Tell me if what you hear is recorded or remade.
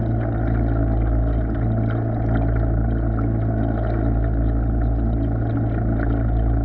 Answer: recorded